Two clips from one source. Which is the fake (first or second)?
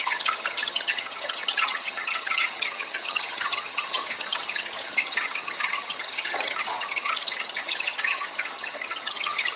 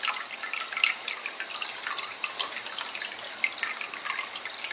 first